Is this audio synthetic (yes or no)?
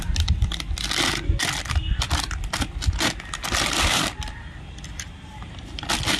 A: no